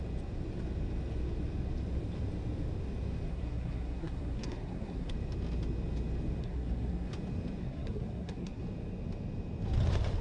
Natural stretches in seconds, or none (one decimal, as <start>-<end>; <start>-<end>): 0.0-3.3; 5.1-6.4; 7.1-7.6; 8.6-10.2